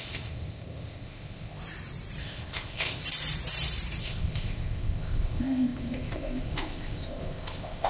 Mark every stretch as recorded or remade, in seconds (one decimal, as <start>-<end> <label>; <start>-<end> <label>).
0.0-1.6 remade; 1.6-2.2 recorded; 2.2-3.0 remade; 3.0-4.0 recorded; 4.0-7.9 remade